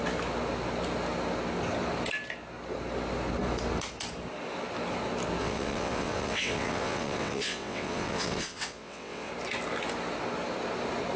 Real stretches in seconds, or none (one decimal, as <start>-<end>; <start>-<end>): 0.0-5.4; 9.3-11.2